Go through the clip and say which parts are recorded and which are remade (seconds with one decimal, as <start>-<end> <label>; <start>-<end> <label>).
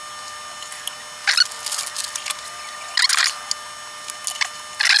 0.0-5.0 recorded